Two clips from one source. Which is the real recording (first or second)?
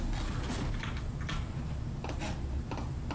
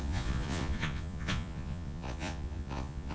first